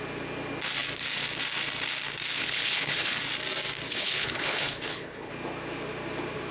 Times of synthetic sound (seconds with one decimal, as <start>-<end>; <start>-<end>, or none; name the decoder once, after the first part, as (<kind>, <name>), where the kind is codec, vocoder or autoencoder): 2.4-3.2 (codec, HILCodec); 3.9-5.3